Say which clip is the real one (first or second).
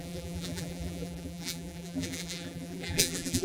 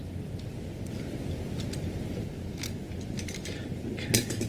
second